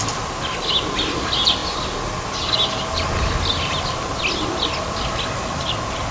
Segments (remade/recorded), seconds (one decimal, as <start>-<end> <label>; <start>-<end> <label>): 0.0-6.1 recorded